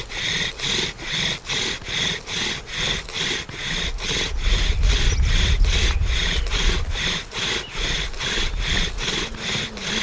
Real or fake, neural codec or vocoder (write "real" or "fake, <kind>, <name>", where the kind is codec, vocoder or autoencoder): real